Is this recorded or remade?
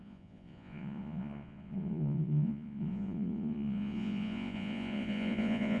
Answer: remade